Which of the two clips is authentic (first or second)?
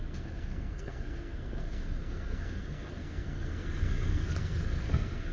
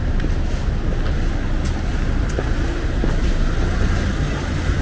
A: second